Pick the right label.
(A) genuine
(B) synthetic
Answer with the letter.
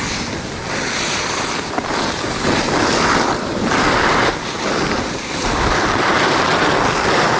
A